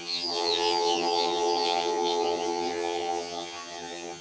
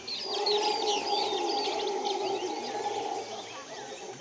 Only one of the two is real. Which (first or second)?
second